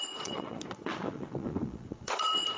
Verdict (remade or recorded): remade